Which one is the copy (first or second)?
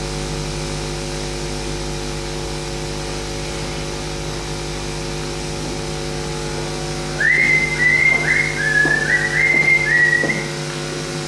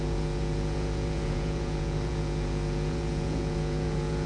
second